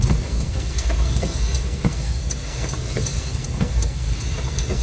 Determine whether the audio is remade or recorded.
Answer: remade